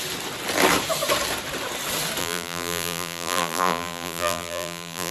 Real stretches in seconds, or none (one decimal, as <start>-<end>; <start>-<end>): 0.0-2.2